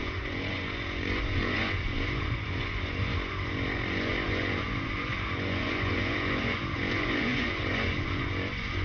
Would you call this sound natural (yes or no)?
no